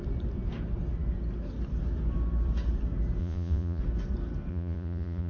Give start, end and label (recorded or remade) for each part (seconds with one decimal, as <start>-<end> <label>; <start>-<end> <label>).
0.0-3.2 recorded; 3.2-3.8 remade; 3.8-4.5 recorded; 4.5-5.3 remade